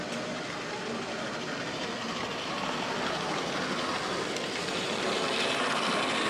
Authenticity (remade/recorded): recorded